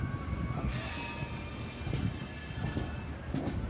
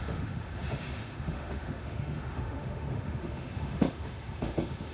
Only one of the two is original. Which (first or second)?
first